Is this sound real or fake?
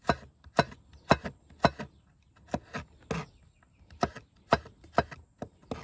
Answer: real